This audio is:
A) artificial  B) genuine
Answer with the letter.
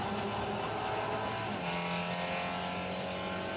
B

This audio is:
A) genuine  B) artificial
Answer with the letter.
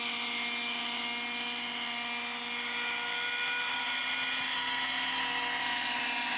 A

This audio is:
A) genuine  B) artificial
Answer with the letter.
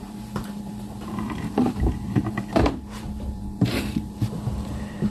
B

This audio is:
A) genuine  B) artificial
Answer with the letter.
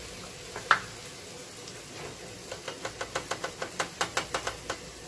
A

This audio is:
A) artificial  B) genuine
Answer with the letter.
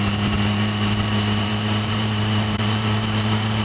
A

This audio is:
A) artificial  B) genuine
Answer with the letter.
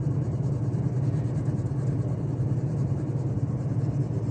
A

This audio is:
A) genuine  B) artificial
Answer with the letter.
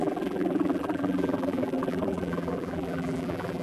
B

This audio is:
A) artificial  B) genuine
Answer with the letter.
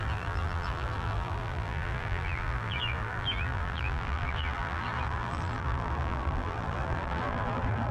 A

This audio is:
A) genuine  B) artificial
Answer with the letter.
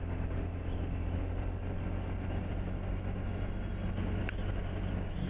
A